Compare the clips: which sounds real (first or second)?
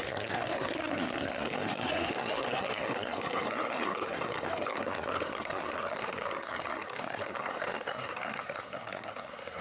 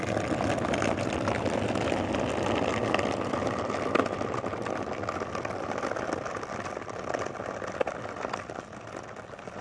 second